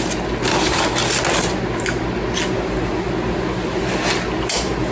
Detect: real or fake real